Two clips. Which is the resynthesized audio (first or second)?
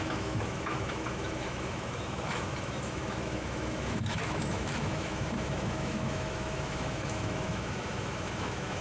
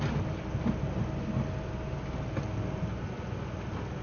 first